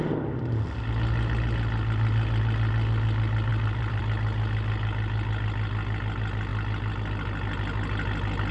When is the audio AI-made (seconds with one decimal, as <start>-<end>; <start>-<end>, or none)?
3.5-4.0